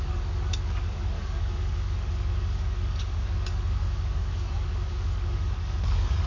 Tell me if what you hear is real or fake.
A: fake